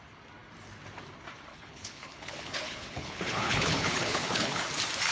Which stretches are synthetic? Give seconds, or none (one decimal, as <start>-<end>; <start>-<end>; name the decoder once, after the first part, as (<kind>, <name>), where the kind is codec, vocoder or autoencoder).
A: 1.5-4.6 (codec, HILCodec)